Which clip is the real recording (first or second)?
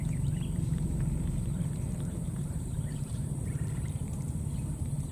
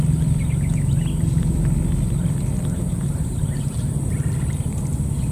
second